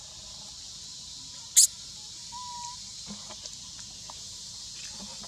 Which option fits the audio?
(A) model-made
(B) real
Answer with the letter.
B